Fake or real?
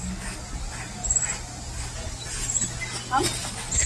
real